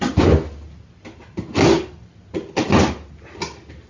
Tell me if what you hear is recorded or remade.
recorded